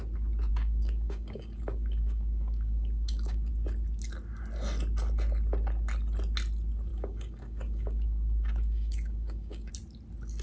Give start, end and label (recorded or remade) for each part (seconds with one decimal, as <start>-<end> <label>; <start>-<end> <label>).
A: 0.0-0.5 recorded; 0.5-3.5 remade; 3.5-6.9 recorded; 6.9-9.7 remade; 9.7-10.4 recorded